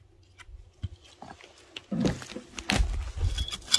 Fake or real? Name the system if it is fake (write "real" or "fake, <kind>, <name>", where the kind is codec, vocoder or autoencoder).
real